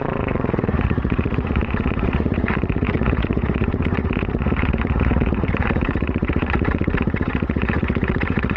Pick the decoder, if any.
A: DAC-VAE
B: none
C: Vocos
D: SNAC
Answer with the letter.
C